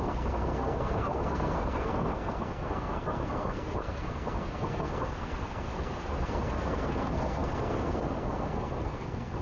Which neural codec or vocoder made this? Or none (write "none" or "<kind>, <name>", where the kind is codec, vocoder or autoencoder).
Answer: codec, SNAC